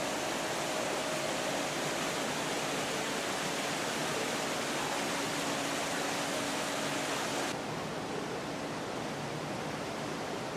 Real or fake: real